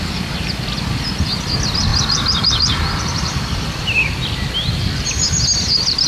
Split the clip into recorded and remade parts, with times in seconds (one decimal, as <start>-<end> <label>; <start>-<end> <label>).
0.0-6.1 recorded